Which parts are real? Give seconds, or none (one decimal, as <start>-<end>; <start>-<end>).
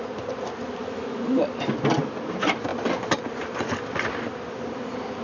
0.0-0.8; 1.4-5.2